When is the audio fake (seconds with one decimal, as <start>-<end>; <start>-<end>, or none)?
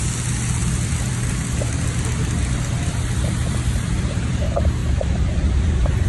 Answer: 0.6-4.3; 4.8-6.1